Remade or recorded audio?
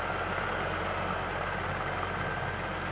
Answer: recorded